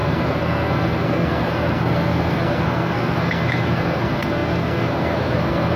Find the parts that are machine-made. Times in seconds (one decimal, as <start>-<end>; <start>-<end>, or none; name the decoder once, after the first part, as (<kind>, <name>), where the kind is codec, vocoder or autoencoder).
0.0-5.8 (codec, SNAC)

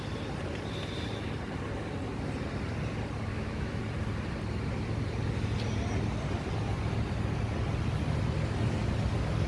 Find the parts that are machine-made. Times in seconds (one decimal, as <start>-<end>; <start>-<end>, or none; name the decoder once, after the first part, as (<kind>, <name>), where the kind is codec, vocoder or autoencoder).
3.3-3.8 (autoencoder, DAC-VAE)

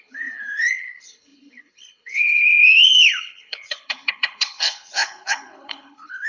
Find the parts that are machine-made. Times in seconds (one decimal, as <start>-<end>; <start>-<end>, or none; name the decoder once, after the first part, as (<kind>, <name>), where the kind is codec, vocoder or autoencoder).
0.0-6.3 (codec, HILCodec)

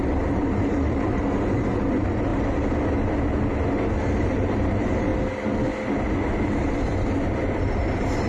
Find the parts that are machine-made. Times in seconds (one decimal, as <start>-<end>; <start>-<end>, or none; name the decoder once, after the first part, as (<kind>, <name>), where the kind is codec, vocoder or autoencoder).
0.0-2.3 (vocoder, BigVGAN v2); 4.2-5.1; 6.4-6.9; 7.5-8.3

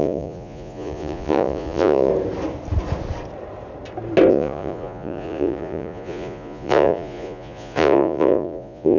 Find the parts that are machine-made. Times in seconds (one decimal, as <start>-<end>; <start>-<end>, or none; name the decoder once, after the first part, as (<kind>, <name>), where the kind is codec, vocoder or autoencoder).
0.0-2.1 (vocoder, Vocos); 4.3-9.0

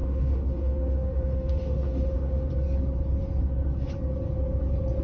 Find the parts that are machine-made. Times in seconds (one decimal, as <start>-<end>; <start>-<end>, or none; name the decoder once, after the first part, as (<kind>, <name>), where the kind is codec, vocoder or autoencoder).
0.0-2.5 (autoencoder, DAC-VAE)